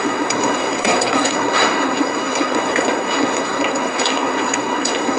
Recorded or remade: remade